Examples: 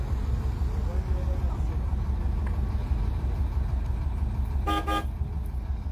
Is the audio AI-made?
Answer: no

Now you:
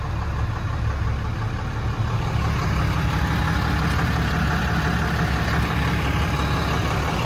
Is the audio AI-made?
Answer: no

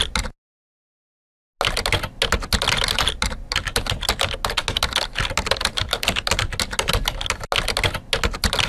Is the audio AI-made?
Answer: no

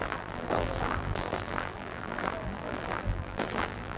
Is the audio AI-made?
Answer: yes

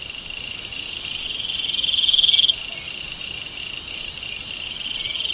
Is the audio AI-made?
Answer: no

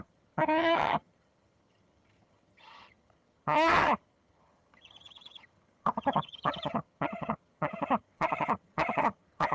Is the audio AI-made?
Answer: yes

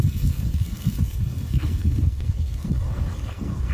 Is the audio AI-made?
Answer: yes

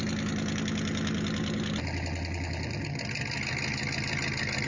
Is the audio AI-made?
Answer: no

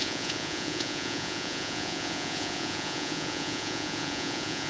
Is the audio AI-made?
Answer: yes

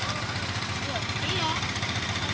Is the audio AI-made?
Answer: no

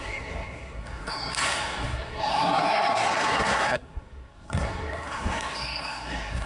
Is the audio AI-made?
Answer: yes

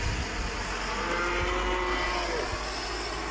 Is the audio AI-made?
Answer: no